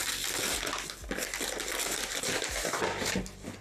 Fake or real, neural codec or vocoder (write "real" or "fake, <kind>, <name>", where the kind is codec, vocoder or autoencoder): real